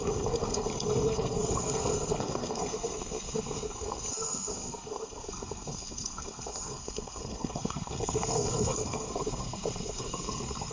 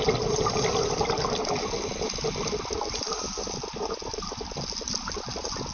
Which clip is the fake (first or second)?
first